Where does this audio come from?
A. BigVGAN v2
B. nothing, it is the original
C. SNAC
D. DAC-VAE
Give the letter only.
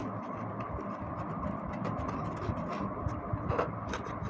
A